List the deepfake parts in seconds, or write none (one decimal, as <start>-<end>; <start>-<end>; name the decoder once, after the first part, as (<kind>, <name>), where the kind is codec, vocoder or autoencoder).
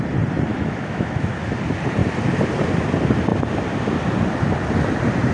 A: 0.5-1.4 (autoencoder, DAC-VAE)